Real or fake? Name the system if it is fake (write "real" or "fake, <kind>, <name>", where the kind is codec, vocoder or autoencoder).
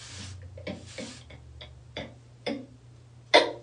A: real